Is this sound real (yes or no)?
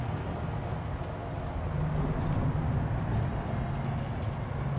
yes